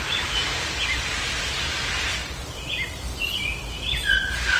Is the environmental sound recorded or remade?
recorded